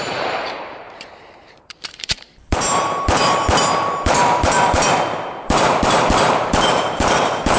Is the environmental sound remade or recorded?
remade